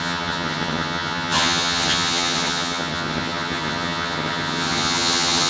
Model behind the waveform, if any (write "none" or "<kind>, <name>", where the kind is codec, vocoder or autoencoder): vocoder, HiFi-GAN